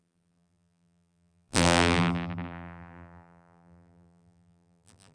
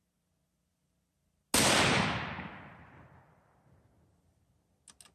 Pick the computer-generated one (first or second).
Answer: first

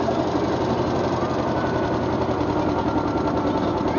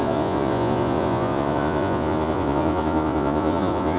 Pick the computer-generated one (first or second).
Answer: second